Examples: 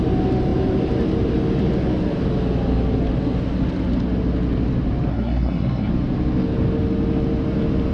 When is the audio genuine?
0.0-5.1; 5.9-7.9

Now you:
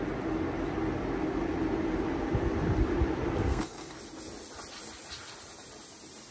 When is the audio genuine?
0.0-3.4; 4.0-6.3

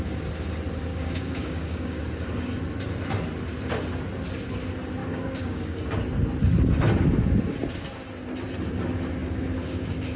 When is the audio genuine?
0.0-0.9; 2.0-5.0; 5.8-9.2

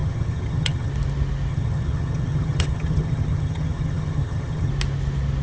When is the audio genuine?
0.9-1.5; 4.7-5.4

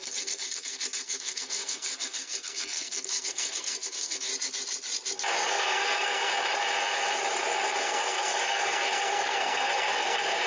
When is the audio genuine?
4.3-5.5; 6.3-7.8

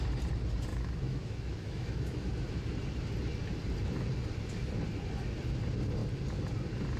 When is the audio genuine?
0.0-0.7; 2.3-7.0